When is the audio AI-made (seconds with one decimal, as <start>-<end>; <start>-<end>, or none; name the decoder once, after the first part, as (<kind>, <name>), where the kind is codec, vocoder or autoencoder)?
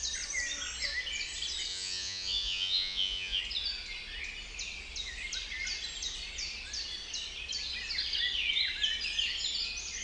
1.7-3.4 (vocoder, Vocos)